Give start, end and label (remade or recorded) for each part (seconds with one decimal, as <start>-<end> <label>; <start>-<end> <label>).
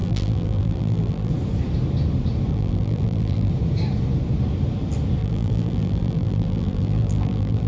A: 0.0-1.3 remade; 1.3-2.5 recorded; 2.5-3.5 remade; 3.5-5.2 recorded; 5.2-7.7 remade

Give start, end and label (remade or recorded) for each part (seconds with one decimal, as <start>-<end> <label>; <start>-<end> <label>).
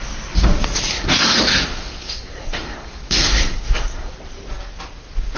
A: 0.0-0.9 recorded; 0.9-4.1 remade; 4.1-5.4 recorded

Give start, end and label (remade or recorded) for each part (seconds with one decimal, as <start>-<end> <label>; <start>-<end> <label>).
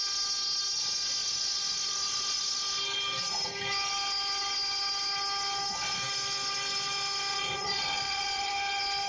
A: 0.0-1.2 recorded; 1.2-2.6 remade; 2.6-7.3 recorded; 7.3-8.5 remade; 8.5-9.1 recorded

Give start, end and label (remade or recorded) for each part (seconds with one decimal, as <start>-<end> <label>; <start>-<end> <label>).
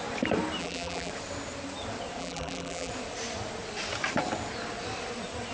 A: 0.0-0.6 recorded; 0.6-1.1 remade; 1.1-2.2 recorded; 2.2-2.9 remade; 2.9-5.5 recorded